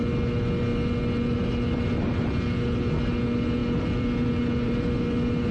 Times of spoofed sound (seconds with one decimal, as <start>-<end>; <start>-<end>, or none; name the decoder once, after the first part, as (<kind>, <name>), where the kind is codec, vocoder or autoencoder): 3.6-5.0 (vocoder, BigVGAN v2)